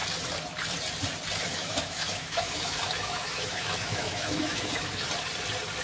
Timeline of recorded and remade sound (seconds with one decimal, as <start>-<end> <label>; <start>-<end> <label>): 0.0-1.5 recorded; 1.5-5.0 remade; 5.0-5.8 recorded